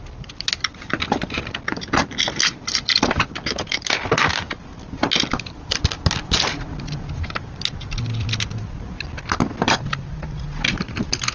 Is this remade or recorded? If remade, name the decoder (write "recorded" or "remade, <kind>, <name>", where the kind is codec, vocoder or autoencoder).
recorded